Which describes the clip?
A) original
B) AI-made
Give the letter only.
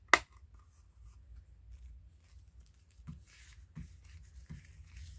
A